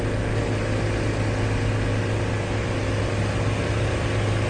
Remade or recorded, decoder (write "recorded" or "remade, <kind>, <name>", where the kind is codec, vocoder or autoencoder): recorded